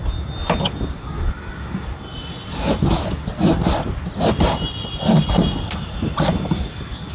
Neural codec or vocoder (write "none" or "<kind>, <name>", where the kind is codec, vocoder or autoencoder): none